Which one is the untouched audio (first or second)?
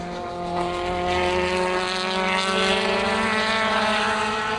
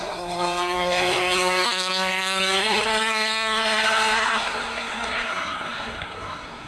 first